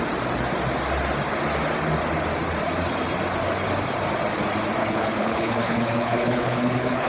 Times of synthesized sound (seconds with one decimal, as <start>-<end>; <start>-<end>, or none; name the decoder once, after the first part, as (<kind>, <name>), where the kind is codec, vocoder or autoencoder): 4.8-7.1 (codec, HILCodec)